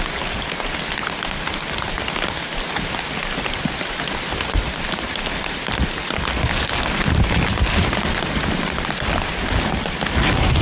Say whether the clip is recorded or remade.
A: recorded